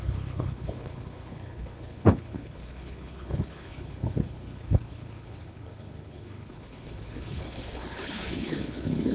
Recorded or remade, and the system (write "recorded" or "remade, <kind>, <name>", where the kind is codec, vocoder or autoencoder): remade, codec, HILCodec